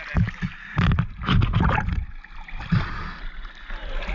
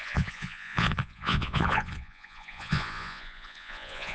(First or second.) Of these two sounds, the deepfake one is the second